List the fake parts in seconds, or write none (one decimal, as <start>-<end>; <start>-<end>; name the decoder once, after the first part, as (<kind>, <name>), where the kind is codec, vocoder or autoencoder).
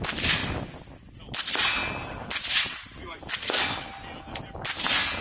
none